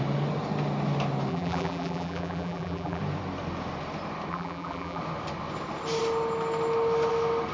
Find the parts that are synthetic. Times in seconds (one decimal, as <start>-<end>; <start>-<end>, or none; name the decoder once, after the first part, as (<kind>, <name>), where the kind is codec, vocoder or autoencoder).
1.3-3.0 (vocoder, BigVGAN v2); 4.3-5.0